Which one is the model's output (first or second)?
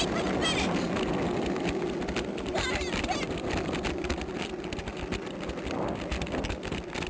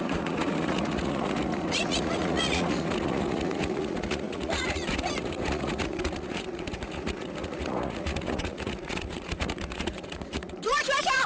second